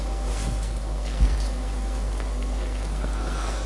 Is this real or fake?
fake